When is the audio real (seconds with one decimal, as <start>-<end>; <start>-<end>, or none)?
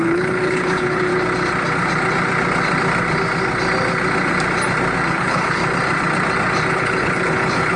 1.1-5.1; 5.6-6.7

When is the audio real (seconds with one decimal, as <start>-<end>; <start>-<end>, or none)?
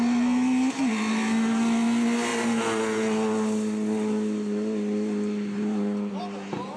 0.0-6.8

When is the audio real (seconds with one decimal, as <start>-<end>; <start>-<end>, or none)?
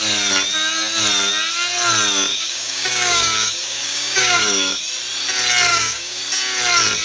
0.0-2.3; 4.8-5.7; 6.2-7.0